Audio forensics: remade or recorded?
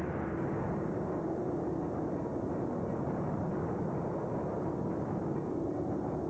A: recorded